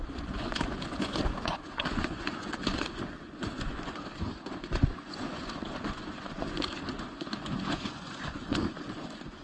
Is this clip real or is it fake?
fake